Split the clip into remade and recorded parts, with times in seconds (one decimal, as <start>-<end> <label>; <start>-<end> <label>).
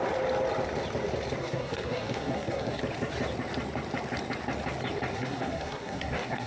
0.0-1.4 recorded; 1.4-2.8 remade; 2.8-5.1 recorded; 5.1-6.5 remade